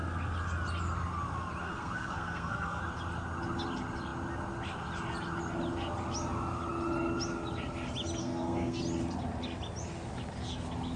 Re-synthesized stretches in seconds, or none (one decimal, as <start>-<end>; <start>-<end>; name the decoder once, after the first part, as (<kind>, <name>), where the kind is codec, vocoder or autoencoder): 1.6-2.8 (codec, SNAC); 8.2-8.8